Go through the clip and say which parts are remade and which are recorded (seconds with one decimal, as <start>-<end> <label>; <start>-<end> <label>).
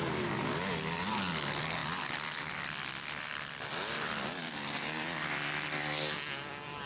0.0-1.8 recorded; 1.8-2.5 remade; 2.5-6.9 recorded